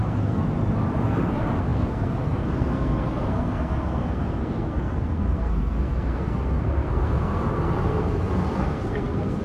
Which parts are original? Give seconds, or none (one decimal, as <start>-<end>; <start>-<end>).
0.4-1.0